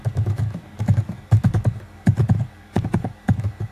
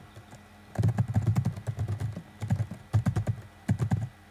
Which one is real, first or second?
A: second